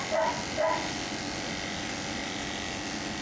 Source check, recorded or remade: recorded